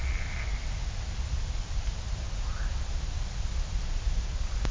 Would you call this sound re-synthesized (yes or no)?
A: no